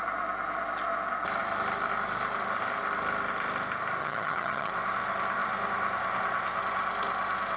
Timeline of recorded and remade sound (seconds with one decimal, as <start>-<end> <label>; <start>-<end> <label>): 0.0-4.0 recorded; 4.0-4.7 remade; 4.7-7.6 recorded